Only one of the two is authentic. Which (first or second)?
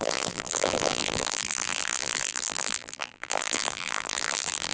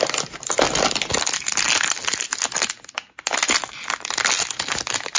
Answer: second